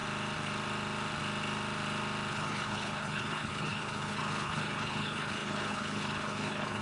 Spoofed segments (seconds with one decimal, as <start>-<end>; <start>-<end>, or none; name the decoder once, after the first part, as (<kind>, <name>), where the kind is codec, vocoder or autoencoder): 2.3-6.8 (codec, HILCodec)